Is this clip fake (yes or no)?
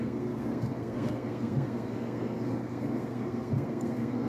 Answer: yes